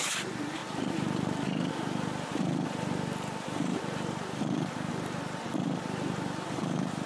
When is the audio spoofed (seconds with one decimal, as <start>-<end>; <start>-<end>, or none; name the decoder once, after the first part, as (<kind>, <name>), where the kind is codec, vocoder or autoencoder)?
none